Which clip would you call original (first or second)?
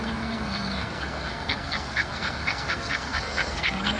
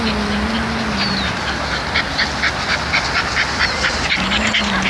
second